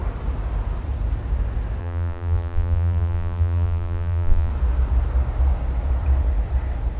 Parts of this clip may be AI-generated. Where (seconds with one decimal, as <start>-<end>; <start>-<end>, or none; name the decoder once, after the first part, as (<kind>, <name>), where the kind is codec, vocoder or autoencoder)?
1.8-4.5 (vocoder, BigVGAN v2)